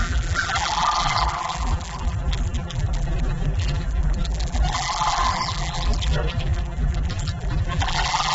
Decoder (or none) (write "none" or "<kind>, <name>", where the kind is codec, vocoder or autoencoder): vocoder, BigVGAN v2